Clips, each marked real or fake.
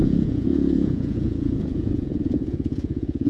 fake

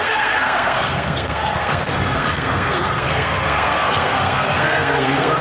fake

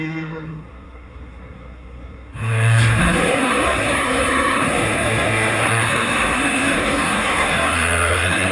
fake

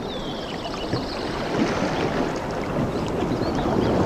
real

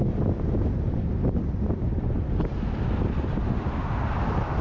real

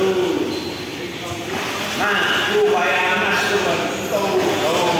real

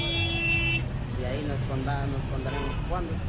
real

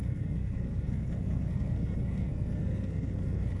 fake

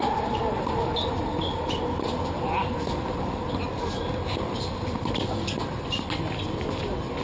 real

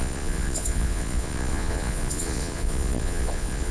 fake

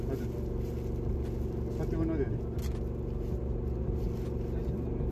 real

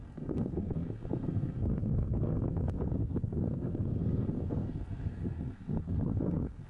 fake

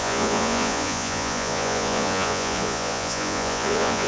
fake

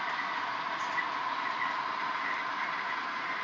real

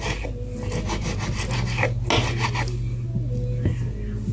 real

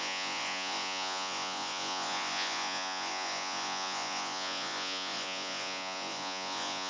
fake